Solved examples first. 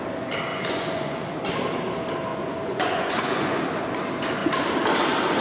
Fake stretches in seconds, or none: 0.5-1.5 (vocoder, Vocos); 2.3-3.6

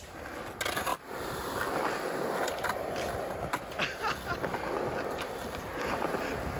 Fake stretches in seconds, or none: 0.9-2.6 (vocoder, BigVGAN v2)

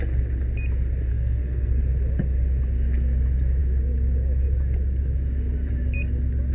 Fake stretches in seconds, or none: 1.1-1.8 (codec, SNAC)

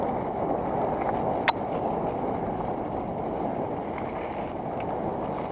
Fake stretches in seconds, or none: none

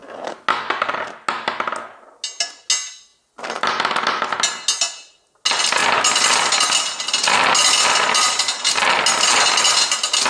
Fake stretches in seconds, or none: none